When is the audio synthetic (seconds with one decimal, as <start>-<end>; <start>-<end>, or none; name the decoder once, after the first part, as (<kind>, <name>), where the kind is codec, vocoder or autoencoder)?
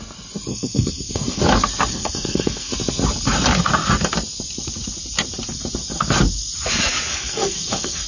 0.5-1.4 (codec, SNAC); 1.9-2.7; 7.1-8.1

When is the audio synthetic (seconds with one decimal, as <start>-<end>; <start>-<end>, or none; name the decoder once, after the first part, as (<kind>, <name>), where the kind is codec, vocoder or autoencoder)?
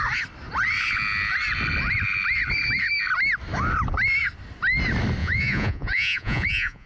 5.2-6.9 (vocoder, Vocos)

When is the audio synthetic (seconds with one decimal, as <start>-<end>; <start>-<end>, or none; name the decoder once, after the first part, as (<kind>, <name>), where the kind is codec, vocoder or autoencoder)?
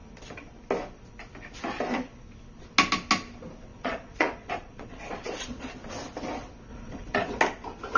3.7-5.7 (vocoder, Vocos); 6.7-7.4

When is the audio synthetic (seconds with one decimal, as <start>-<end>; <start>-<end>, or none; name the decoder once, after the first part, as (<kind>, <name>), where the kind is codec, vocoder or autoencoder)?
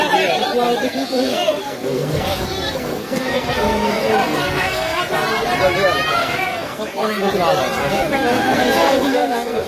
0.8-5.0 (codec, SNAC); 6.2-7.3; 7.8-9.7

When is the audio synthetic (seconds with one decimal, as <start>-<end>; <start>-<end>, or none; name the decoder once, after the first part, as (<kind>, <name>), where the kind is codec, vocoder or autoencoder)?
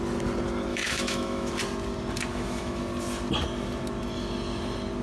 0.7-1.5 (autoencoder, DAC-VAE); 2.3-2.8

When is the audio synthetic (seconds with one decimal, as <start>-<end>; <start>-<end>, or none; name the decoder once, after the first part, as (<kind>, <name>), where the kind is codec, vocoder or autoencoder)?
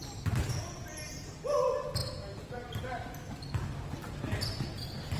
none